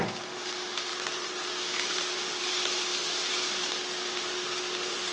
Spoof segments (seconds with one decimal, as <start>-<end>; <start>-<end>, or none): none